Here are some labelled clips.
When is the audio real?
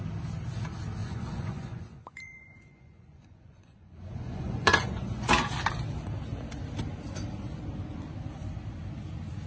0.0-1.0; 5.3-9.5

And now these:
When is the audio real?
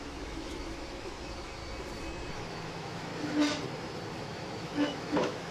1.6-2.3; 3.1-4.2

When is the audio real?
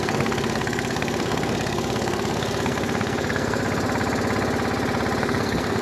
3.6-5.2